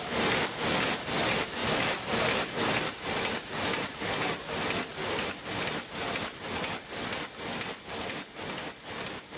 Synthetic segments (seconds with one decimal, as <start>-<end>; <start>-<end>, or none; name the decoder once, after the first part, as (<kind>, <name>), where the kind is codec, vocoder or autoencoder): none